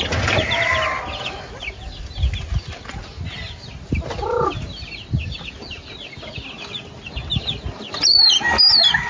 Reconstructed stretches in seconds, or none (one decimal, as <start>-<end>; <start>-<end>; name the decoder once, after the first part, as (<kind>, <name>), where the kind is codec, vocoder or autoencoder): none